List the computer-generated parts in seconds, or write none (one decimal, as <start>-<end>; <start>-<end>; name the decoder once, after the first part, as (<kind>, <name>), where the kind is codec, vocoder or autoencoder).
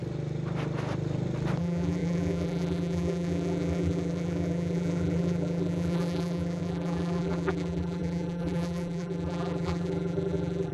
1.6-10.7 (vocoder, BigVGAN v2)